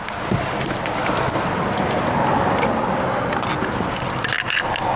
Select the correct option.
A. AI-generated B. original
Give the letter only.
B